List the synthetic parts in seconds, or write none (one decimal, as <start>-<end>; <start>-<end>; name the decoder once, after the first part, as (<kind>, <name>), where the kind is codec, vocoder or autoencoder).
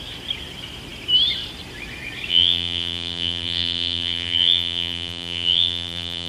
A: 2.3-6.3 (vocoder, BigVGAN v2)